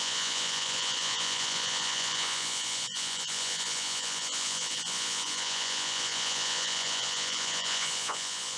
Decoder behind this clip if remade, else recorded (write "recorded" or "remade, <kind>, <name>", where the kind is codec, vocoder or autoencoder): remade, vocoder, Vocos